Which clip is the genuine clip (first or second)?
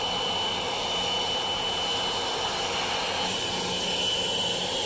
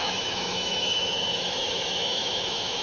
first